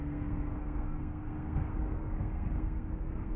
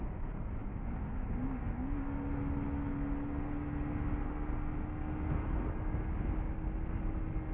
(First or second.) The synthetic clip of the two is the first